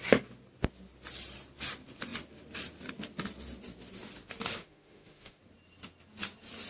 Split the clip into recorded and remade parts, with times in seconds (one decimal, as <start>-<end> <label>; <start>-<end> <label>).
0.0-4.6 recorded; 4.6-5.4 remade; 5.4-6.7 recorded